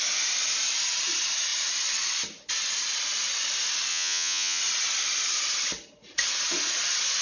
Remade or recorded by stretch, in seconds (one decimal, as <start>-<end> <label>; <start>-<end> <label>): 0.0-3.9 recorded; 3.9-4.6 remade; 4.6-7.2 recorded